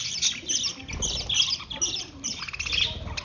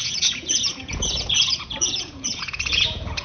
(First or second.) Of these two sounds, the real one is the first